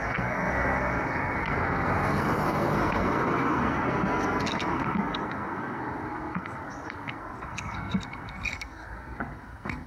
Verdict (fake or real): fake